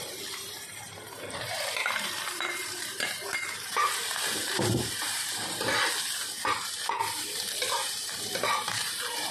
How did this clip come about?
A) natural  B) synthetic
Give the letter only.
B